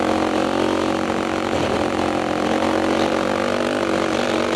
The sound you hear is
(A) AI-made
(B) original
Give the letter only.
B